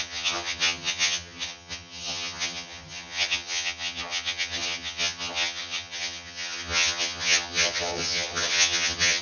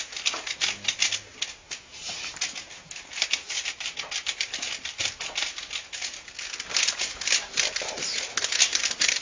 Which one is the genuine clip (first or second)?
second